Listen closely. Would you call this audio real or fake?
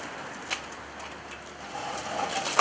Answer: real